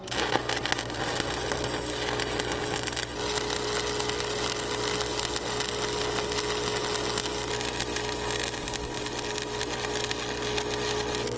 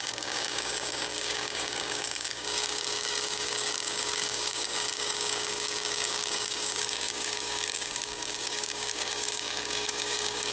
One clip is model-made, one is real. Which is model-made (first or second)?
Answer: second